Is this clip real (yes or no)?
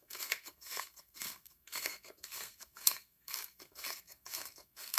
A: no